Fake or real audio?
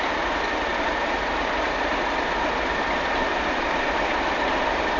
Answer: real